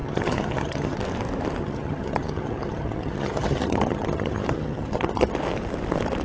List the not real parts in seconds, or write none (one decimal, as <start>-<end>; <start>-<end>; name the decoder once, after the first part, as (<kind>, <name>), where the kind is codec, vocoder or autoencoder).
0.0-1.0 (vocoder, HiFi-GAN); 1.6-5.3

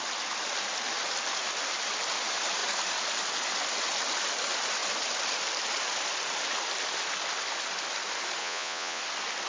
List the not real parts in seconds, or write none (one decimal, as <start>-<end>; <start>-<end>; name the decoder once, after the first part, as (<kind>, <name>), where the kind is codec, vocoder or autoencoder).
8.4-9.0 (vocoder, Vocos)

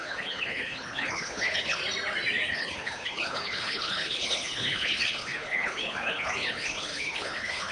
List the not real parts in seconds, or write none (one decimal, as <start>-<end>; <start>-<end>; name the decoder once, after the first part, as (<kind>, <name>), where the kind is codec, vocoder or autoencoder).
0.0-1.8 (codec, HILCodec); 2.5-7.7

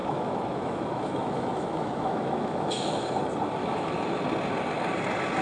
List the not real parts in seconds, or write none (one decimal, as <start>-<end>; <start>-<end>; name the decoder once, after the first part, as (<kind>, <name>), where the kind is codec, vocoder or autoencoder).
0.0-3.2 (autoencoder, DAC-VAE); 3.6-4.2

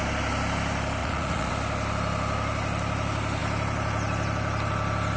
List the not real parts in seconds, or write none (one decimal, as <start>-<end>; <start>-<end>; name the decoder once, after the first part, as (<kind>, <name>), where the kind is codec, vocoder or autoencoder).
1.0-1.5 (vocoder, Vocos)

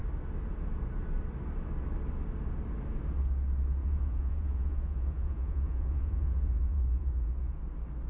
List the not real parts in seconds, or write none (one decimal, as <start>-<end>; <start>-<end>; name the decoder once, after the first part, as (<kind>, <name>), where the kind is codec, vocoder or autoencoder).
3.8-7.6 (vocoder, Vocos)

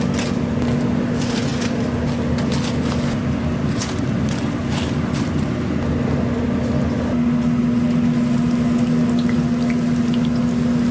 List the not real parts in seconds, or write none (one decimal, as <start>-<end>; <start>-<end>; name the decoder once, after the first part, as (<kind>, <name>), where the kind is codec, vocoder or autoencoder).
none